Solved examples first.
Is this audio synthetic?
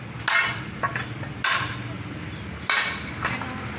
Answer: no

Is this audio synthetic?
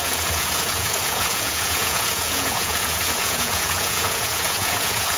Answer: yes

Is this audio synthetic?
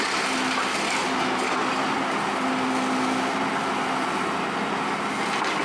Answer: no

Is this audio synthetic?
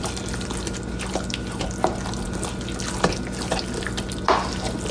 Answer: no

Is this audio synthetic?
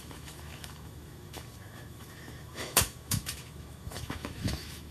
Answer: yes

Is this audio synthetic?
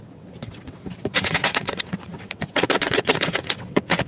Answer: yes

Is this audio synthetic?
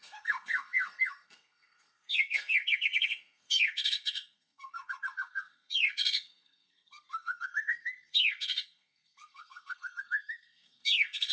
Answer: yes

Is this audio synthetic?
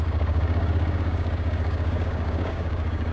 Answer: yes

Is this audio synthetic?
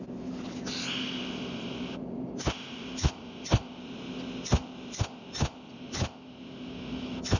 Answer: no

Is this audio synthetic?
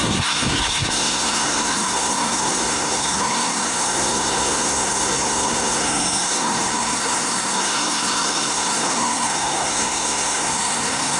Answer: yes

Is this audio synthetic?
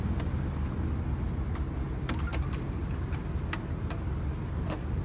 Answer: no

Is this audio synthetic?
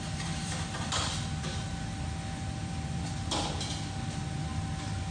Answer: no